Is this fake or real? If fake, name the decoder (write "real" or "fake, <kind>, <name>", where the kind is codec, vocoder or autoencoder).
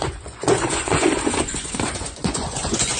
fake, vocoder, Vocos